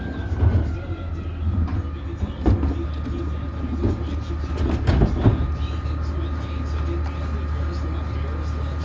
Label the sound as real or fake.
real